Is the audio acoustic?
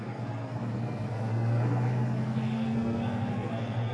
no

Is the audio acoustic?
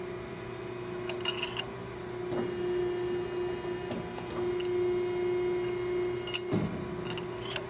yes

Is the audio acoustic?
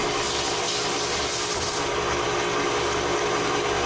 yes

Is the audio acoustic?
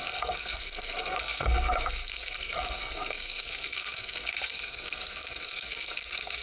no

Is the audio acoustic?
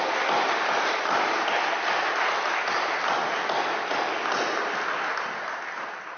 yes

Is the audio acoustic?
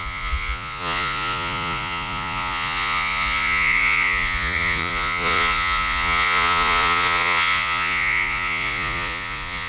no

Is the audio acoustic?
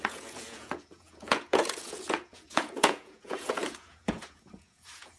no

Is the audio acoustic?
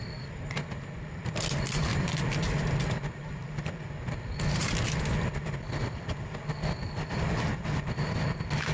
yes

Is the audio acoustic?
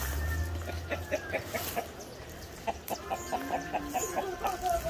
yes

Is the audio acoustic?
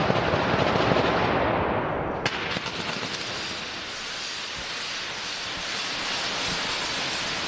yes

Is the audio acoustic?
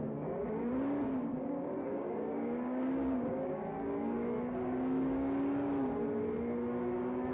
no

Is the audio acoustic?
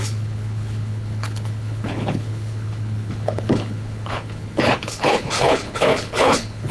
no